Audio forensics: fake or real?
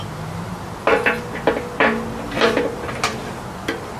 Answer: real